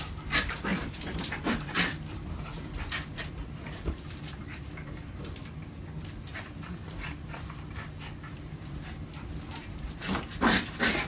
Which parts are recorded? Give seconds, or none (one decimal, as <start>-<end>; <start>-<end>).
5.4-8.3